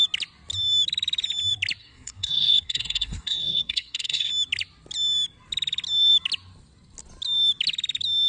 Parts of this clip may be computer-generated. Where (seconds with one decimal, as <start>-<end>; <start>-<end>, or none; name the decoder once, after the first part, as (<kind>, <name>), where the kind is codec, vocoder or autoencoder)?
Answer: 1.8-4.3 (codec, SNAC)